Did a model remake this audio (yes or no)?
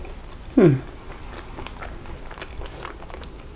no